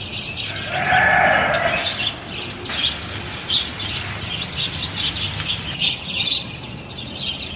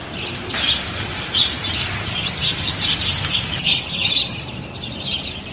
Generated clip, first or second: second